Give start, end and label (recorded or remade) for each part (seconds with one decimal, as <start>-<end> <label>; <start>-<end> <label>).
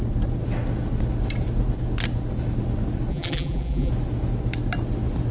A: 0.0-3.1 recorded; 3.1-3.9 remade; 3.9-5.3 recorded